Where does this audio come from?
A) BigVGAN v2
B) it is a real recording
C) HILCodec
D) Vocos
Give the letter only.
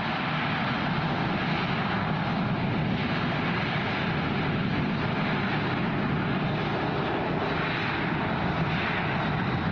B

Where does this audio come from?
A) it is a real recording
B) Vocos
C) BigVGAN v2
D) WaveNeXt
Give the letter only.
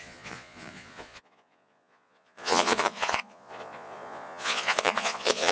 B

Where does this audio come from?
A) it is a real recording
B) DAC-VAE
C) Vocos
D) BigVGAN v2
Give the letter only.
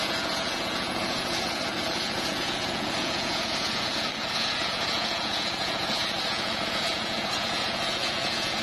C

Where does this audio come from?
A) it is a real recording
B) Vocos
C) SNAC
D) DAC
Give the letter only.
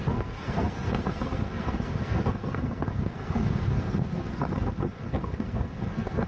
C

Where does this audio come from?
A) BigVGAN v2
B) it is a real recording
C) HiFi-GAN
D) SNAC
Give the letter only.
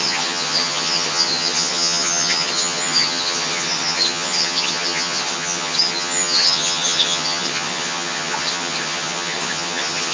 C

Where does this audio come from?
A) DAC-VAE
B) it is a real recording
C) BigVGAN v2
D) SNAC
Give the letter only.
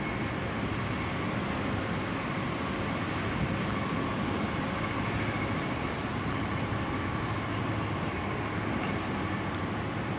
B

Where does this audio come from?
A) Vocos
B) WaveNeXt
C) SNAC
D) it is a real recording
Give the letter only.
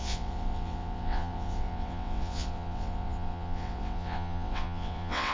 B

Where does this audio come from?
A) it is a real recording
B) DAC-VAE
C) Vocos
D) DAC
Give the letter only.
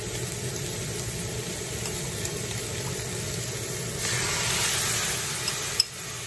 A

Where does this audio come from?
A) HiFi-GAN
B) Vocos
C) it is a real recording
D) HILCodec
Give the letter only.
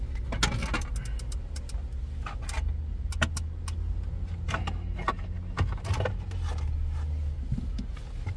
C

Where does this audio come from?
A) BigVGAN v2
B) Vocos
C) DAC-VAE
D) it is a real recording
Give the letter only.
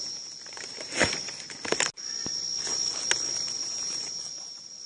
D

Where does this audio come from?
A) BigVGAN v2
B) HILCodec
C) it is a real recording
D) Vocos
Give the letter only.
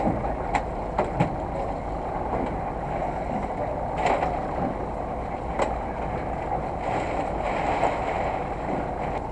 C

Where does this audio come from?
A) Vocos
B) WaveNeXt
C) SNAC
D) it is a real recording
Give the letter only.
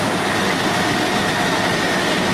D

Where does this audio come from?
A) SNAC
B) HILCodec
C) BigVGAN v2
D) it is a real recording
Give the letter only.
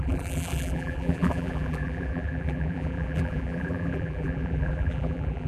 C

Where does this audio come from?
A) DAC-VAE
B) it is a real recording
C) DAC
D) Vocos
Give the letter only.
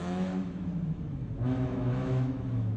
A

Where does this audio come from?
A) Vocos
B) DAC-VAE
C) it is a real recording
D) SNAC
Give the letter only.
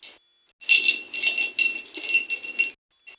C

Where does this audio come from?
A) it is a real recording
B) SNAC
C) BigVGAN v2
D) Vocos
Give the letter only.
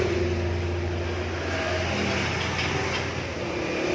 A